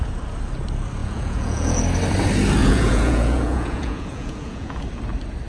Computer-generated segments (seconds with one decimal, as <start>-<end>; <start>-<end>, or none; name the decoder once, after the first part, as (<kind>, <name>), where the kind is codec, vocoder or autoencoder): 1.0-1.8 (vocoder, Vocos); 2.6-4.8